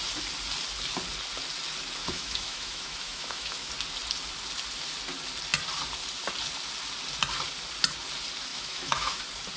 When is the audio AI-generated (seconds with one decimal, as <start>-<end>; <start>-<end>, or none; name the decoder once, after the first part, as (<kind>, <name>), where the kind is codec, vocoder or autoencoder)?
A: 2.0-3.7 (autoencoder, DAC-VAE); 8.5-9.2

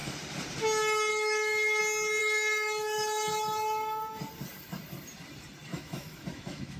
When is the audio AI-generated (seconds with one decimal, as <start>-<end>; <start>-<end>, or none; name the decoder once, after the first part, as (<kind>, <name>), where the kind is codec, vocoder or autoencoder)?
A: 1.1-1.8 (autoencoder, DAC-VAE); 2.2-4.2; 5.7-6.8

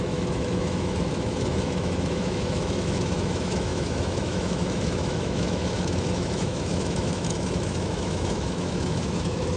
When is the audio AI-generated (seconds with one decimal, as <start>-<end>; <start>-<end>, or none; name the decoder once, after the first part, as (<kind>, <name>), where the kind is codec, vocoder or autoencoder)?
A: 0.0-9.6 (autoencoder, DAC-VAE)

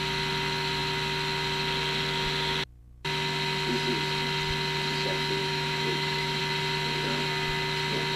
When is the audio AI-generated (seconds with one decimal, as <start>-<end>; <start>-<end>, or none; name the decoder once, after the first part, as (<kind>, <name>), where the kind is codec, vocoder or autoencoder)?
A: 5.4-6.4 (autoencoder, DAC-VAE)